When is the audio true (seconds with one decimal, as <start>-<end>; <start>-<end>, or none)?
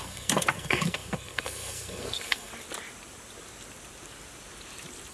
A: 2.5-5.1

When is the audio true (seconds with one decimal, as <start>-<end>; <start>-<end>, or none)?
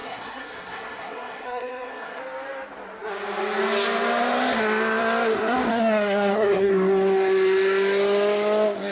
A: 2.2-5.7; 6.7-8.9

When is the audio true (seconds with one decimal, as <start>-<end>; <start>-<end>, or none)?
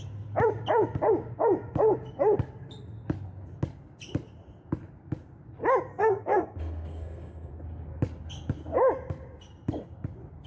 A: 0.0-5.9; 7.5-10.5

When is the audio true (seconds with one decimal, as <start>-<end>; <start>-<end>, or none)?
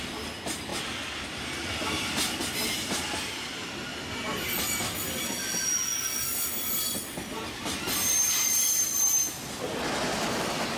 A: 0.0-10.8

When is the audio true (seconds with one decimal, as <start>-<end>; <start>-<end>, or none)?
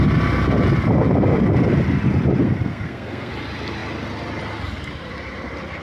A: 0.0-2.4; 3.3-5.8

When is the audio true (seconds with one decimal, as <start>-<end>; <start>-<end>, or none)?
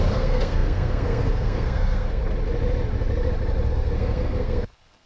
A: 2.2-3.7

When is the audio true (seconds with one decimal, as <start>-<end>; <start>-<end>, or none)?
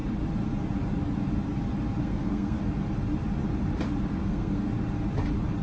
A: 0.0-2.0; 2.6-4.2; 4.7-5.6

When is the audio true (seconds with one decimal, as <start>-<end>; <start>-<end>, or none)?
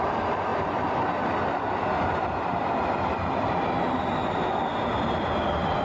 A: 0.0-5.8